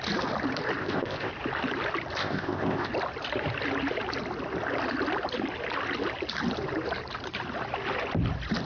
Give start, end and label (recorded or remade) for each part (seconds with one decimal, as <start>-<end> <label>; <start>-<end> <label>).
0.0-0.8 recorded; 0.8-1.3 remade; 1.3-2.2 recorded; 2.2-2.9 remade; 2.9-8.7 recorded